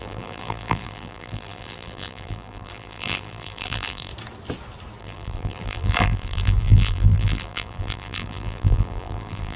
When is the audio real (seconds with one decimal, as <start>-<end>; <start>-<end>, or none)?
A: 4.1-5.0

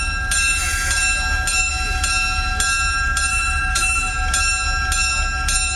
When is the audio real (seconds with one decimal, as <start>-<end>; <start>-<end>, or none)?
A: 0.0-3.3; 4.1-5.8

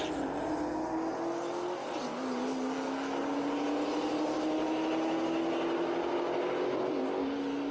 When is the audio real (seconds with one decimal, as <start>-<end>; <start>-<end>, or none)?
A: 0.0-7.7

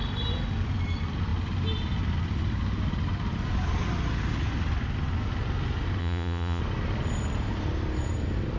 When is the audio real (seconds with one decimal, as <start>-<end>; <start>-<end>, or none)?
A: 0.0-6.0; 6.6-8.6